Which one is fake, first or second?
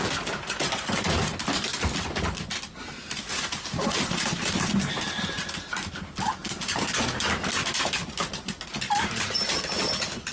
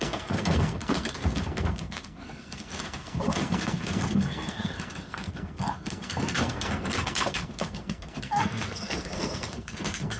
second